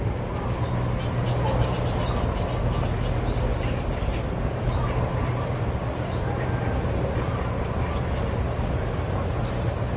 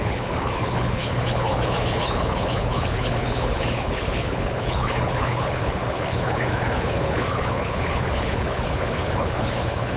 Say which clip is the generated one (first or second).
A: second